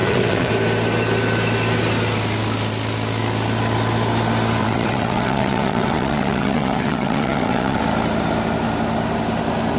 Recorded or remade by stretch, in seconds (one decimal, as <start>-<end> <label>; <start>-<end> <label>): 0.0-0.5 remade; 0.5-4.6 recorded; 4.6-7.8 remade; 7.8-9.8 recorded